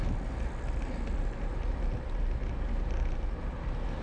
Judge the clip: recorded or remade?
recorded